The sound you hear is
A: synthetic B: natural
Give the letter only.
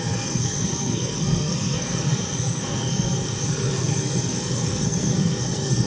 A